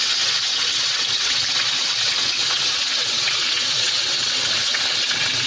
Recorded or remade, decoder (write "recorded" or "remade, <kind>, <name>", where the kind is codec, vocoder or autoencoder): remade, vocoder, WaveNeXt